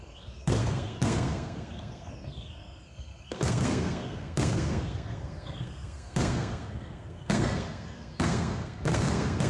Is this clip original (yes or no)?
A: no